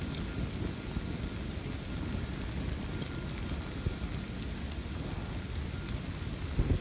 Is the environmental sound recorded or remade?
recorded